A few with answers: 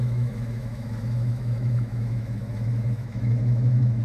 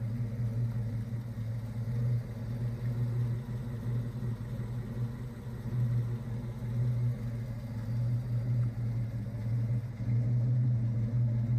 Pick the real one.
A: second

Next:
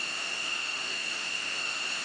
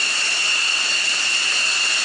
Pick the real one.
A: second